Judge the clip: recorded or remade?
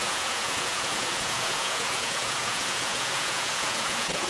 remade